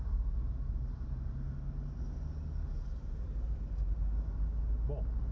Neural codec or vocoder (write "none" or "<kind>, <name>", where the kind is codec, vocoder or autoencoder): none